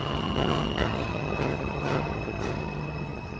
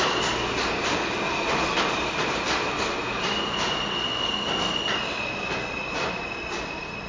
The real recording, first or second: second